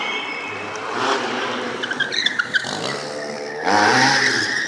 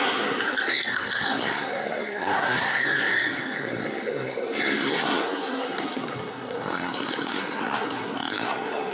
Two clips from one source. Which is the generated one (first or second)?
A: second